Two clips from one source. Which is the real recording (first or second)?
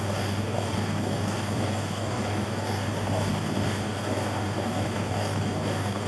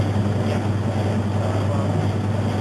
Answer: second